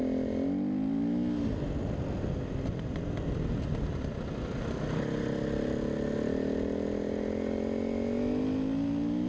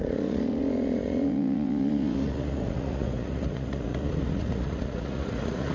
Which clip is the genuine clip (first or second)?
first